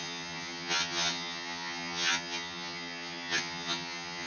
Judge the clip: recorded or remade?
remade